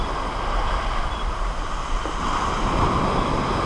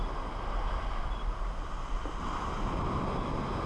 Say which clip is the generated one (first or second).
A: first